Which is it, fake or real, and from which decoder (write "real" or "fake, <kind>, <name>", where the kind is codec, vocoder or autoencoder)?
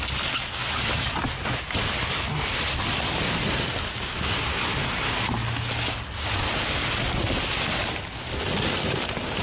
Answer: real